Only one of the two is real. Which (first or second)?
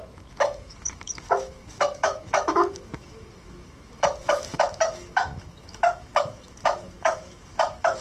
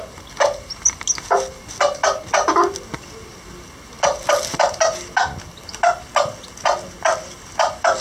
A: second